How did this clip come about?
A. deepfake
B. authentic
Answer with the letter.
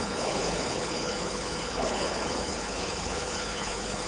A